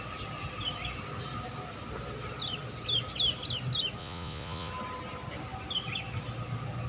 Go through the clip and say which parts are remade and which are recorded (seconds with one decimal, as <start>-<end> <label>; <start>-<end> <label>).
0.0-4.0 recorded; 4.0-4.7 remade; 4.7-6.9 recorded